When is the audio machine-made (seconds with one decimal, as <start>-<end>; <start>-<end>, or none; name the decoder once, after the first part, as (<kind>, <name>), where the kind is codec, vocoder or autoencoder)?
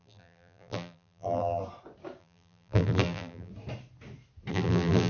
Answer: 0.0-1.6 (vocoder, BigVGAN v2); 2.2-3.5; 4.5-5.1